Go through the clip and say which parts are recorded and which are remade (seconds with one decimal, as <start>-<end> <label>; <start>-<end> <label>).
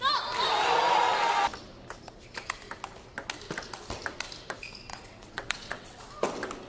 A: 0.0-4.9 recorded; 4.9-6.0 remade; 6.0-6.7 recorded